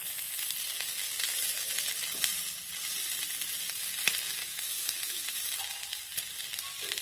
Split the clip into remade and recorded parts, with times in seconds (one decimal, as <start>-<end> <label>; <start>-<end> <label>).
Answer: 0.0-4.4 recorded; 4.4-5.4 remade; 5.4-7.0 recorded